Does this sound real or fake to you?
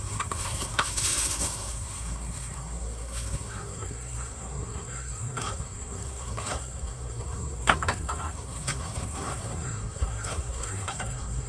fake